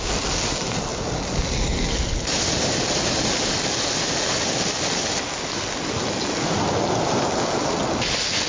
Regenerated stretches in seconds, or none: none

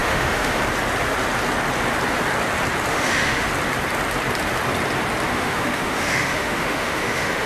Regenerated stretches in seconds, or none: 0.0-0.6 (autoencoder, DAC-VAE); 2.9-3.5; 5.3-7.5

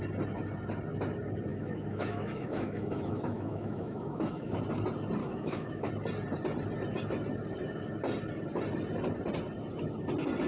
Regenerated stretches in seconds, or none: 1.5-4.6 (autoencoder, DAC-VAE); 5.2-5.9

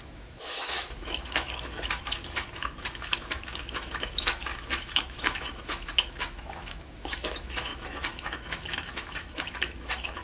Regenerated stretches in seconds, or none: 0.0-10.2 (autoencoder, DAC-VAE)

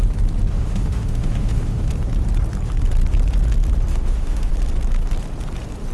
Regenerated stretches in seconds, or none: 0.5-1.9 (autoencoder, DAC-VAE); 3.9-4.5